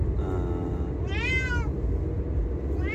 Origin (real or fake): real